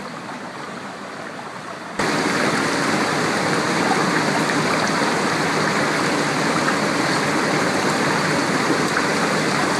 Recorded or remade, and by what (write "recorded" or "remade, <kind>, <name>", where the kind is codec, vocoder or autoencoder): recorded